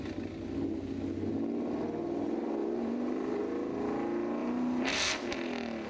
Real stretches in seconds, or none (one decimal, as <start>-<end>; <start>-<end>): 0.0-2.6; 3.4-4.4; 5.1-5.9

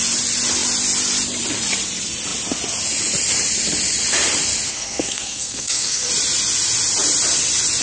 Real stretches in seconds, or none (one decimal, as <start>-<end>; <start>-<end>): 0.0-4.7; 6.1-7.8

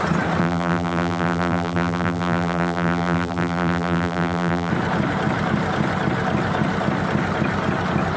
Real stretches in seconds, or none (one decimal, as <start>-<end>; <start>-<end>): 0.0-0.4; 4.7-8.2

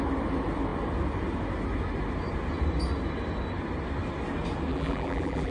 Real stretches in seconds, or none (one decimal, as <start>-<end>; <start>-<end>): 0.0-4.7

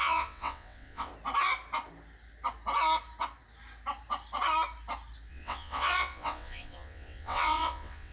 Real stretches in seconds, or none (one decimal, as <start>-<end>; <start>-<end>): 1.1-5.3

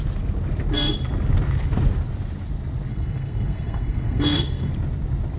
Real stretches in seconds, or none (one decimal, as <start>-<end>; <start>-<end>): 0.0-2.9; 4.7-5.4

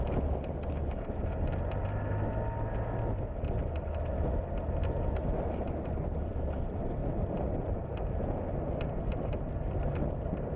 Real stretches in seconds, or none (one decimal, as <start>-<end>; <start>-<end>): 0.0-10.6

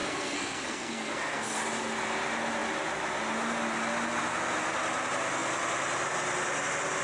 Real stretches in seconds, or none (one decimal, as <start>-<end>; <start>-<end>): 1.6-7.0